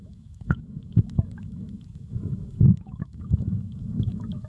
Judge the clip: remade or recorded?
remade